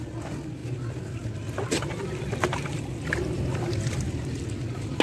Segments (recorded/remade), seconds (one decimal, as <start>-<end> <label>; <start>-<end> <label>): 0.0-5.0 recorded